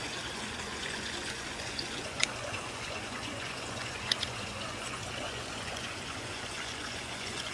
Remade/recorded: remade